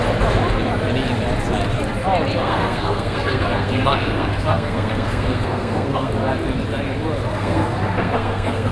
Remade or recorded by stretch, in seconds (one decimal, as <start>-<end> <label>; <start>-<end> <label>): 0.0-2.4 recorded; 2.4-6.1 remade; 6.1-7.3 recorded; 7.3-8.7 remade